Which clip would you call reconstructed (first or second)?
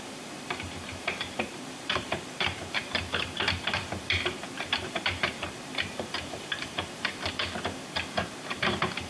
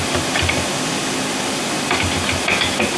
first